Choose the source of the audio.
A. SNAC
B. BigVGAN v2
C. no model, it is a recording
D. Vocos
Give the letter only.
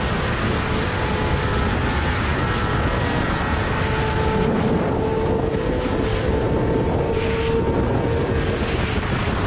C